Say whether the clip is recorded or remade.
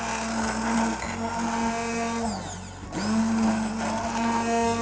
recorded